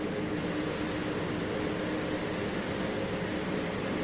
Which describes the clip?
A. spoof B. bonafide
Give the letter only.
B